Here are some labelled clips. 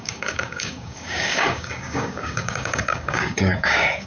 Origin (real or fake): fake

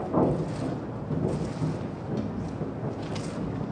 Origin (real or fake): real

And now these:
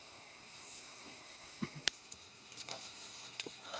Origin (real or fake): fake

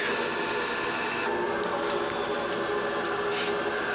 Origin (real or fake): real